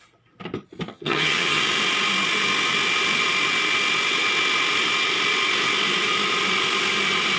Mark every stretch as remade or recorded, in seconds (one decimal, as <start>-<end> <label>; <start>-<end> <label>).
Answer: 0.0-0.9 recorded; 0.9-1.6 remade; 1.6-7.4 recorded